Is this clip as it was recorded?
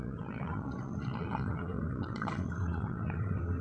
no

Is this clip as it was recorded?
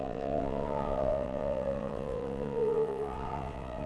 no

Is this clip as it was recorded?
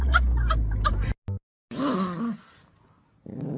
yes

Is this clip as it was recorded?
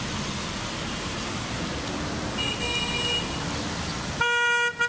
yes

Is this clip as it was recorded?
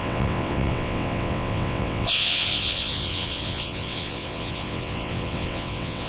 no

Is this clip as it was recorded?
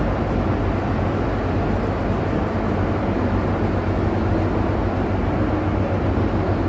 yes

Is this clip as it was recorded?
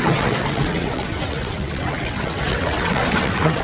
no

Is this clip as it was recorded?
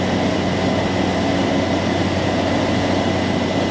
yes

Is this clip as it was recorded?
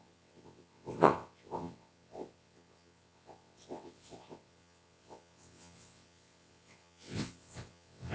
no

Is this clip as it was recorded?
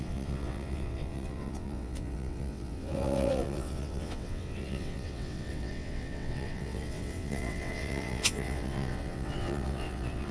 no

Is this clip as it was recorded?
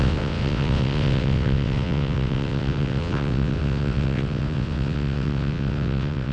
no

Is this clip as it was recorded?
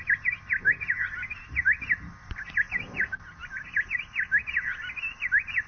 yes